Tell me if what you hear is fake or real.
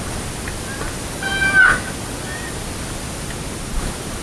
real